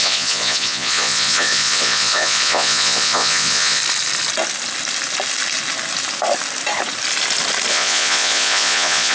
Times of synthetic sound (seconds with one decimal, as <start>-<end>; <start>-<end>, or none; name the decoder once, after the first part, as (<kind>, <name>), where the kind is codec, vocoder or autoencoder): 0.0-3.8 (vocoder, Vocos); 7.7-9.1